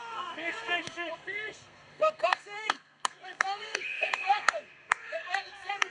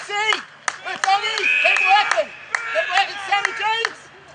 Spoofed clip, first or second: first